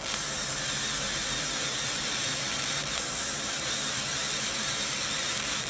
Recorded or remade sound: recorded